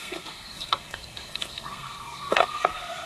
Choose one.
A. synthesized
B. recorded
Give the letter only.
A